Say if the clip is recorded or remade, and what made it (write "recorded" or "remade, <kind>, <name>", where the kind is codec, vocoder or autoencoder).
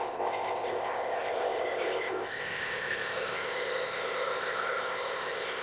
remade, codec, ZipCodec